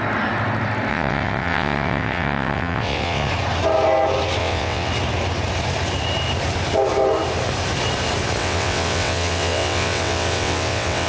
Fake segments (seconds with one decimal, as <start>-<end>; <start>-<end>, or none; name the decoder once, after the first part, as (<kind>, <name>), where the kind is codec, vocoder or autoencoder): 0.9-3.3 (vocoder, WaveNeXt); 4.4-4.9; 8.4-11.1